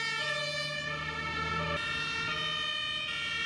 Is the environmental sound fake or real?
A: real